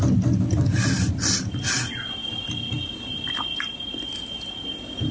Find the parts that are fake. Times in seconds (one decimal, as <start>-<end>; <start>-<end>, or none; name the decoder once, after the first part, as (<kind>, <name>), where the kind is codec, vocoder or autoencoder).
none